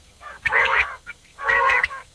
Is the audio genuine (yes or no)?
no